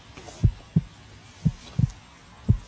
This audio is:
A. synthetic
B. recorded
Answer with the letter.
B